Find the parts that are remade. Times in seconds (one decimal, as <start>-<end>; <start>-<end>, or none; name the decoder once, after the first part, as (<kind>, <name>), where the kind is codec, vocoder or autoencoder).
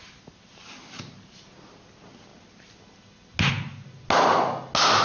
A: none